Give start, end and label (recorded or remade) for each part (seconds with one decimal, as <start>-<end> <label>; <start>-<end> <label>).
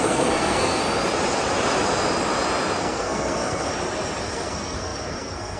0.0-0.8 remade; 0.8-2.8 recorded; 2.8-3.7 remade; 3.7-4.2 recorded; 4.2-5.6 remade